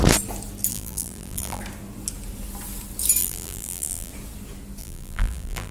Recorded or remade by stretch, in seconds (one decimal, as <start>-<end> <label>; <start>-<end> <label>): 0.0-0.7 recorded; 0.7-1.6 remade; 1.6-3.2 recorded; 3.2-4.1 remade; 4.1-4.8 recorded; 4.8-5.7 remade